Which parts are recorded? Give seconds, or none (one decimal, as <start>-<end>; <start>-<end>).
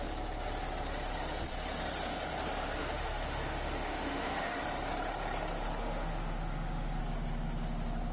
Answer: 0.0-2.8; 4.6-5.8; 7.0-8.1